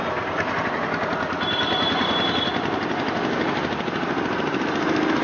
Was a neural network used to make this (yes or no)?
no